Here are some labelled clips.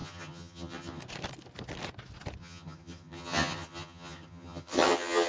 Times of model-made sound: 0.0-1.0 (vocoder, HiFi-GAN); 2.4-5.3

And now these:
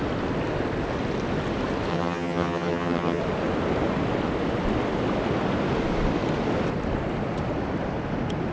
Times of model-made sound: 1.9-3.2 (vocoder, HiFi-GAN)

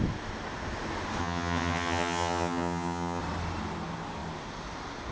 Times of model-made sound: 1.2-3.2 (vocoder, HiFi-GAN)

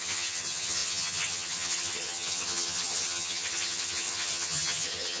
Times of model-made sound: 0.0-5.2 (vocoder, HiFi-GAN)